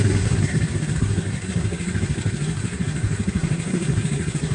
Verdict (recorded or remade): remade